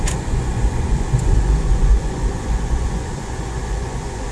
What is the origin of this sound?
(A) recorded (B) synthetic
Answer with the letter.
B